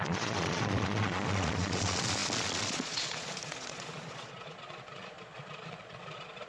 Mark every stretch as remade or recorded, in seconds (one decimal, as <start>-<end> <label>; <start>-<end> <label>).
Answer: 0.0-6.5 remade